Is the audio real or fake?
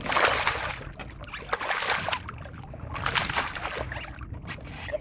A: real